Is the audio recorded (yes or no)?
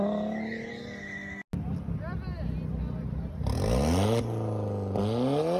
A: yes